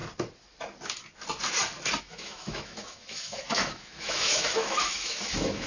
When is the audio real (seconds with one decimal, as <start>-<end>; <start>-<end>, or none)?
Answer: 0.0-2.0